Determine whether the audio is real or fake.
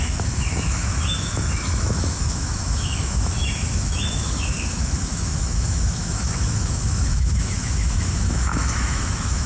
fake